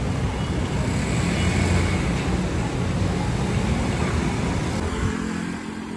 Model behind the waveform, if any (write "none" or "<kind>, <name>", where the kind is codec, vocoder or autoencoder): none